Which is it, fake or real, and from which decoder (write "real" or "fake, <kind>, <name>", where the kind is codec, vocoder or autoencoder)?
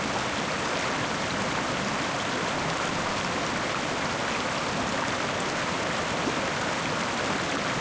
real